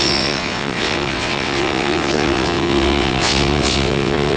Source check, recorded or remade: remade